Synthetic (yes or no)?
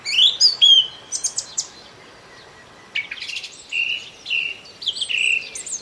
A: no